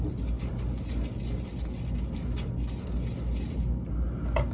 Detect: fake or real real